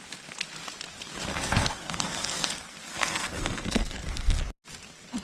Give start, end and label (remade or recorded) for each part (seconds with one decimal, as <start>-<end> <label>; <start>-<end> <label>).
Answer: 0.0-1.3 recorded; 1.3-4.4 remade; 4.4-5.2 recorded